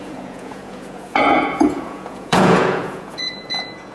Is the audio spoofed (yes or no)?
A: yes